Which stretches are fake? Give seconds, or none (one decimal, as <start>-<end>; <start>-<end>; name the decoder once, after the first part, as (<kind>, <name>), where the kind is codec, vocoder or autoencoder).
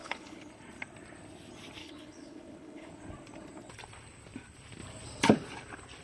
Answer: 0.0-0.5 (codec, HILCodec); 1.8-2.9